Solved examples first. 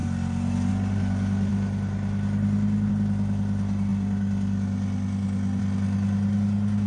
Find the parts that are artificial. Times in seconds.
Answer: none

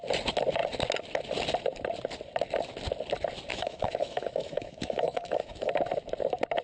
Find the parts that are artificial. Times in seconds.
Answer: 3.5-5.7 (autoencoder, DAC-VAE)

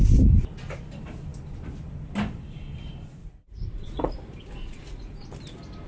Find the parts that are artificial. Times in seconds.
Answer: 3.2-4.1 (vocoder, Vocos); 4.6-5.3

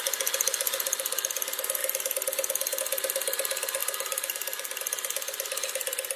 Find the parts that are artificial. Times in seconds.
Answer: 3.8-4.8 (vocoder, BigVGAN v2)

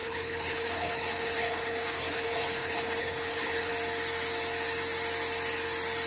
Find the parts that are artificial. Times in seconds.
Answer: 0.0-3.7 (codec, HILCodec)

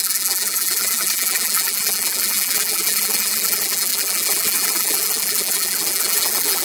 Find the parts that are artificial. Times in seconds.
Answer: 0.0-6.6 (vocoder, BigVGAN v2)